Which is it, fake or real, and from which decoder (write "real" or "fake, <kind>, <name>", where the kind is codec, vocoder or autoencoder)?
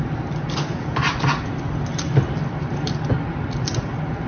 real